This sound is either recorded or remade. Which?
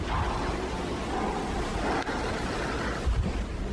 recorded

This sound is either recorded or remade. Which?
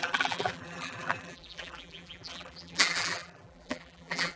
remade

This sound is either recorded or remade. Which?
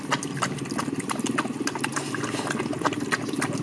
recorded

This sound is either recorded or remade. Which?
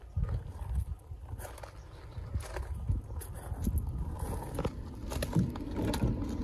recorded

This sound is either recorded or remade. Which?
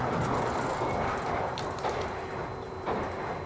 recorded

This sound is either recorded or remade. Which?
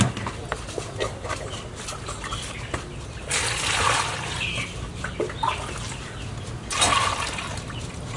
recorded